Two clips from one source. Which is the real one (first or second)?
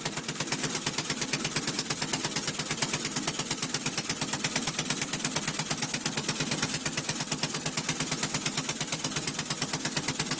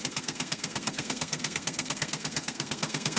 first